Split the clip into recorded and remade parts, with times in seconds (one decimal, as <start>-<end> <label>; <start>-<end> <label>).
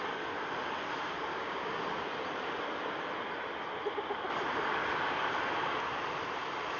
0.0-1.3 recorded; 1.3-1.8 remade; 1.8-6.8 recorded